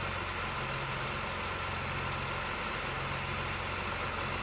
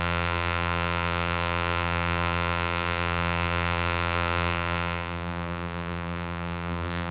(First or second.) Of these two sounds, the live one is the first